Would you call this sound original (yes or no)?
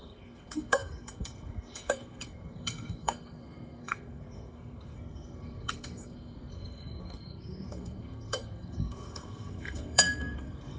no